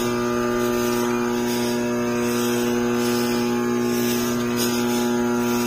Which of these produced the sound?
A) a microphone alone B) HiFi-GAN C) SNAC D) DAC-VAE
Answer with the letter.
A